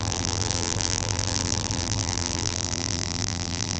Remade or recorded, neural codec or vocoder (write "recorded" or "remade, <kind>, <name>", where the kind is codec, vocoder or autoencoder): remade, vocoder, BigVGAN v2